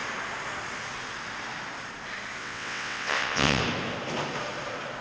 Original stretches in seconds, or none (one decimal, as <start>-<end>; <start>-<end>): 0.0-2.4; 3.6-5.0